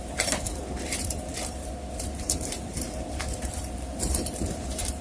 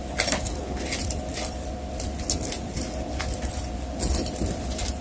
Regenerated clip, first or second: first